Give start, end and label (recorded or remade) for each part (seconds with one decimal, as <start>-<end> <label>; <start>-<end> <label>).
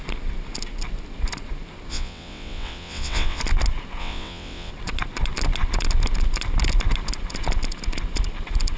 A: 0.0-1.9 recorded; 1.9-3.4 remade; 3.4-4.0 recorded; 4.0-4.7 remade; 4.7-8.8 recorded